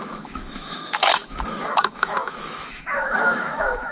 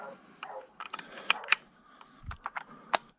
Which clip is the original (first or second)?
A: second